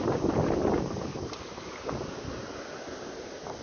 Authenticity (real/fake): real